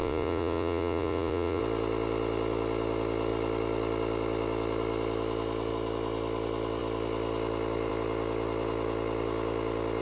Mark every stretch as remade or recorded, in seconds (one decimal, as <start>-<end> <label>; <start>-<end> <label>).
0.0-1.6 remade; 1.6-10.0 recorded